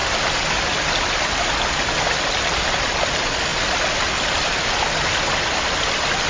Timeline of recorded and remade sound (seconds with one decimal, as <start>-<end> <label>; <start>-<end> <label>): 0.0-6.3 recorded